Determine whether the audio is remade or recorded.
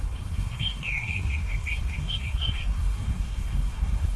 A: remade